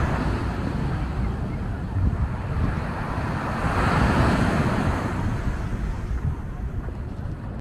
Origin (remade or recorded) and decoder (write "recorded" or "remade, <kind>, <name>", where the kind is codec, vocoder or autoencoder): recorded